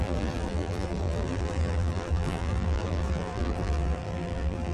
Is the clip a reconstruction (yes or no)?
yes